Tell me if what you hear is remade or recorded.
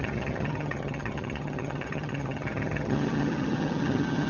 remade